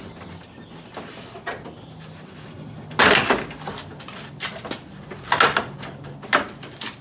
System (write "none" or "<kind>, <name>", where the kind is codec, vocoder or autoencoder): none